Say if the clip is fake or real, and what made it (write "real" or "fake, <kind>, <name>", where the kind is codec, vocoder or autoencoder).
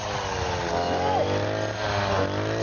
real